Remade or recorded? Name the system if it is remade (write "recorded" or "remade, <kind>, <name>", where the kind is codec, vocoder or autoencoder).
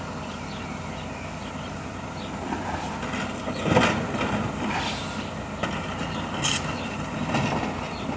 recorded